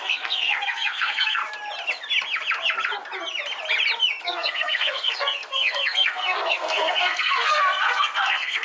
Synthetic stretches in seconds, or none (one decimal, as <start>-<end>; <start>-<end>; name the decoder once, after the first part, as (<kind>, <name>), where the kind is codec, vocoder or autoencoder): 0.0-1.4 (codec, SNAC); 4.2-8.6